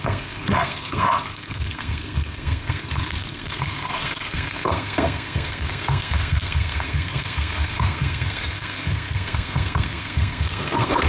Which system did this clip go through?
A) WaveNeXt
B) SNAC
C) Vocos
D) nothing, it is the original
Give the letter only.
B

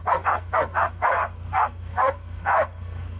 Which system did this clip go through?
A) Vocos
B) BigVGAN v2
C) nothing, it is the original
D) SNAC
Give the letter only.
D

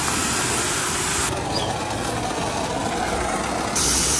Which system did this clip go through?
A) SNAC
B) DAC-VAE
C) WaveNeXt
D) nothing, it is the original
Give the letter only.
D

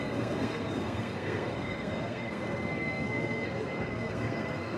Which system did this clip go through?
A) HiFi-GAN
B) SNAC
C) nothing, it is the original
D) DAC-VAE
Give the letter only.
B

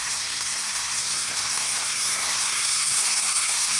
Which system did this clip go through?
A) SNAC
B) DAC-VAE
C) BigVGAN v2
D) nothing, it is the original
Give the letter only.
A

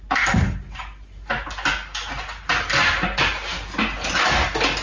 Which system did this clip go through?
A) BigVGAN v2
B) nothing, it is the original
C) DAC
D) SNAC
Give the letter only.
B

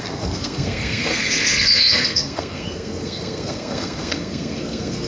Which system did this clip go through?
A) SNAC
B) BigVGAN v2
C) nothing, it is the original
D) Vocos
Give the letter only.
A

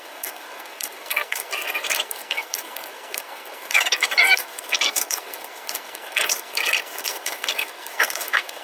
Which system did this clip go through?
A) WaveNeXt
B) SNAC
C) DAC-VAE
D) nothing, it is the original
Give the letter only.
B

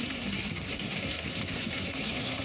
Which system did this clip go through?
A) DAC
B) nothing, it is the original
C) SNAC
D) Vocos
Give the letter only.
C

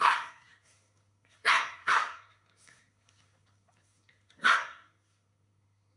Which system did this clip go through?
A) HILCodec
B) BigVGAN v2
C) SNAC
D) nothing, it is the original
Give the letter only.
C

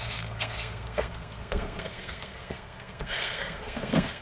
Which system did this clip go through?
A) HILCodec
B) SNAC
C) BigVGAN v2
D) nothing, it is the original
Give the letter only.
B